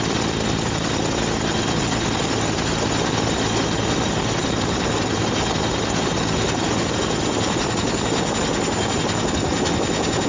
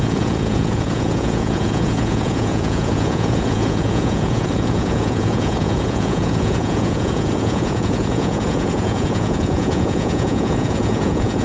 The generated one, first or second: second